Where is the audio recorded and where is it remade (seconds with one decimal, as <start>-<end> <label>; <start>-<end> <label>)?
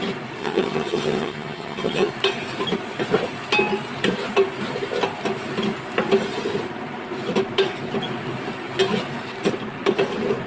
0.0-0.4 recorded; 0.4-2.1 remade; 2.1-10.5 recorded